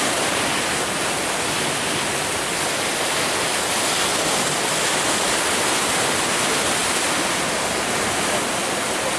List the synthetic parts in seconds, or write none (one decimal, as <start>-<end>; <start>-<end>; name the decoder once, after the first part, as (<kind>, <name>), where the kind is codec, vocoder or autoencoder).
none